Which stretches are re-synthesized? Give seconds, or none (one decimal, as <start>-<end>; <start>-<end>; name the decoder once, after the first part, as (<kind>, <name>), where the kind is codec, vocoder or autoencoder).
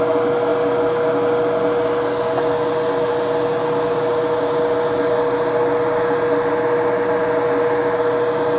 none